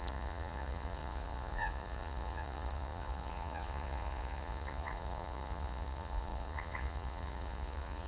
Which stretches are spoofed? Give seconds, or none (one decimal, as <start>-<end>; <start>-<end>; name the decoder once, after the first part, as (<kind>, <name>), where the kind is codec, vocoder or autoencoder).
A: 0.0-8.1 (vocoder, Vocos)